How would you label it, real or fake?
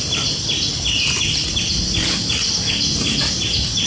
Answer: real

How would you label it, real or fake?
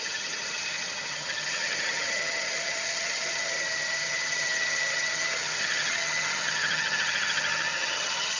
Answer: fake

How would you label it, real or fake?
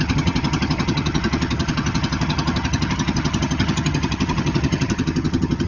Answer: fake